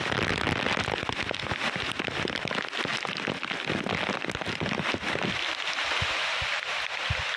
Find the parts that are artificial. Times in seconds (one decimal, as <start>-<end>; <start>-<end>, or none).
none